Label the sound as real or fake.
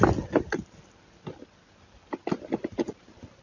real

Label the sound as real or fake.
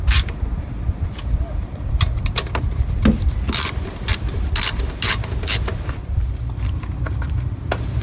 fake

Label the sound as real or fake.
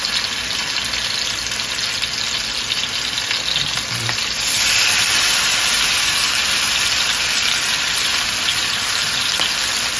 real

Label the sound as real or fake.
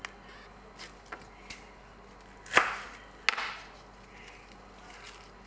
real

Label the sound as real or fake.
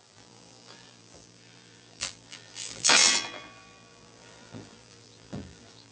fake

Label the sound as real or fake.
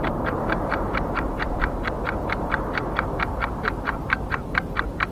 fake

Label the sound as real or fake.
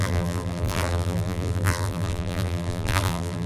fake